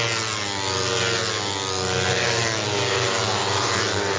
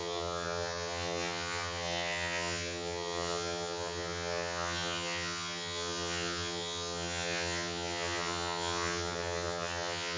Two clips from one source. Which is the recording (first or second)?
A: first